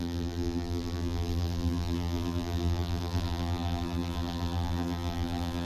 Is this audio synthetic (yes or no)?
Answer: yes